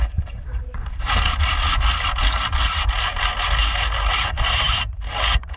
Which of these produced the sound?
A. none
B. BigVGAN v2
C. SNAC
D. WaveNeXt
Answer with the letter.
B